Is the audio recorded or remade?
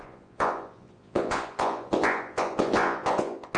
remade